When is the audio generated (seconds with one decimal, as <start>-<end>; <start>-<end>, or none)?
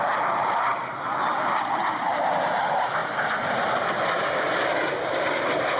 0.0-0.7; 1.6-3.0; 4.0-5.8